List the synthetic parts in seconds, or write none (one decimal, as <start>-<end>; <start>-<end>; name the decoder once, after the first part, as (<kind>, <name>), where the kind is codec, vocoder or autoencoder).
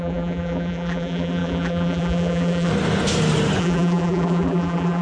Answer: 0.0-2.7 (vocoder, BigVGAN v2); 3.6-5.0